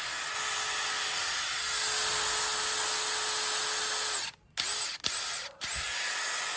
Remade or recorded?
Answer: recorded